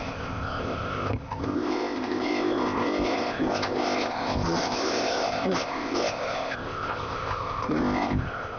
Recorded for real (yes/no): no